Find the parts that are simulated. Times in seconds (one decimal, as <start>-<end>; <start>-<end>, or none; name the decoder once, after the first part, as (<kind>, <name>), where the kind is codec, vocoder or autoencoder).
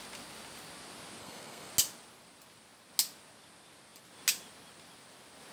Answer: 1.2-1.7 (codec, SNAC)